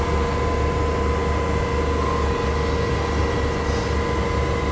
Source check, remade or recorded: recorded